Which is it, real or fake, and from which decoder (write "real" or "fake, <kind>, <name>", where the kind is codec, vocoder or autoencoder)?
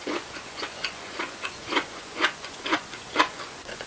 fake, vocoder, Vocos